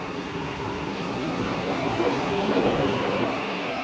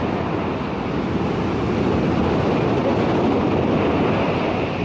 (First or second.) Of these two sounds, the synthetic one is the first